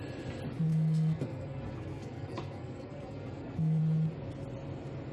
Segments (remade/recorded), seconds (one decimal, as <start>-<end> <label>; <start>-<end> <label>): 0.0-0.7 recorded; 0.7-3.8 remade; 3.8-5.1 recorded